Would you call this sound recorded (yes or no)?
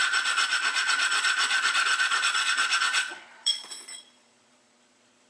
no